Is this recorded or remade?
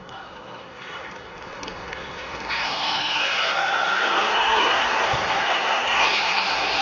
remade